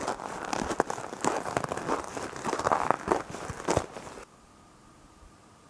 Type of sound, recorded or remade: recorded